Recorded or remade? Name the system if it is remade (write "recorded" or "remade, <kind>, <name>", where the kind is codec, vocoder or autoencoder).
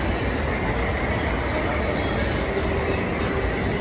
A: recorded